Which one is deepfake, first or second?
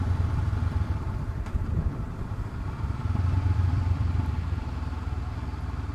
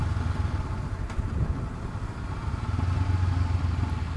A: first